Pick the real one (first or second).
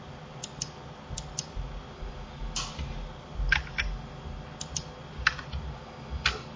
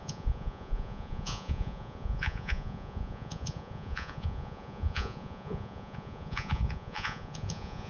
first